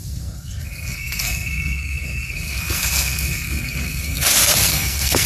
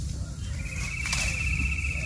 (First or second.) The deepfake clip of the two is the first